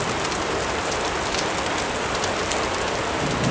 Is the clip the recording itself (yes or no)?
yes